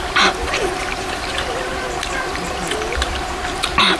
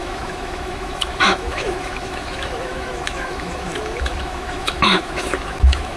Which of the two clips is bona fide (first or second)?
first